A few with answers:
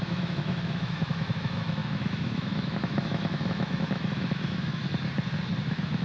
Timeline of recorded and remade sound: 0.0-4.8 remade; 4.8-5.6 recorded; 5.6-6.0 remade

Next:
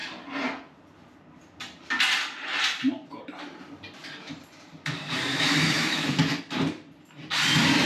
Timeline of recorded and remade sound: 0.0-5.3 recorded; 5.3-6.4 remade; 6.4-7.9 recorded

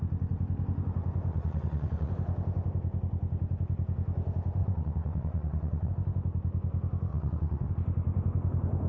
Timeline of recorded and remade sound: 0.0-1.3 recorded; 1.3-2.1 remade; 2.1-4.6 recorded; 4.6-5.9 remade; 5.9-7.1 recorded; 7.1-7.7 remade; 7.7-8.9 recorded

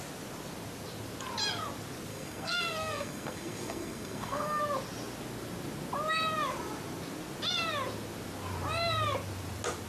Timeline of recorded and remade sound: 0.0-2.1 recorded; 2.1-4.6 remade; 4.6-9.9 recorded

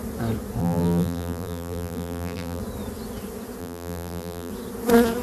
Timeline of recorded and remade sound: 0.0-0.6 recorded; 0.6-2.6 remade; 2.6-3.6 recorded; 3.6-4.5 remade; 4.5-5.2 recorded

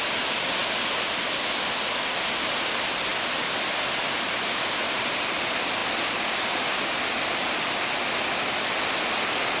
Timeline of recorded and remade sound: 0.0-0.6 remade; 0.6-2.6 recorded; 2.6-3.1 remade; 3.1-4.5 recorded; 4.5-9.6 remade